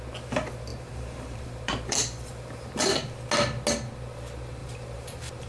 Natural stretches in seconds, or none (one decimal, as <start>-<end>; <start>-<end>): 0.0-0.7; 2.7-4.6